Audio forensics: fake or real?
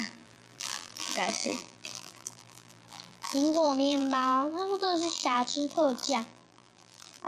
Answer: fake